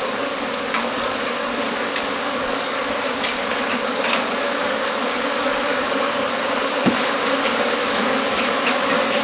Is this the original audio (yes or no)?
no